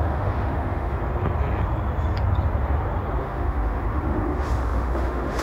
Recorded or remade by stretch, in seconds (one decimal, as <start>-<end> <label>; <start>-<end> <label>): 0.0-1.0 remade; 1.0-3.2 recorded; 3.2-5.4 remade